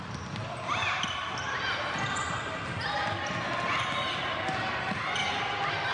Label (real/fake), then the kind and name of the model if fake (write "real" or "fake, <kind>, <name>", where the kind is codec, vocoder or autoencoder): real